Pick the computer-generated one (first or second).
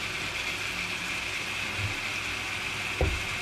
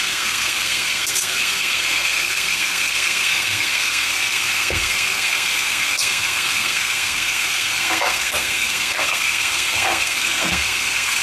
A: second